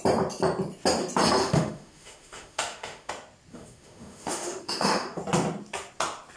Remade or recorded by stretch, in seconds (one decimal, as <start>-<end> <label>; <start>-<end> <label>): 0.0-1.4 recorded; 1.4-3.1 remade; 3.1-3.5 recorded; 3.5-5.2 remade; 5.2-6.4 recorded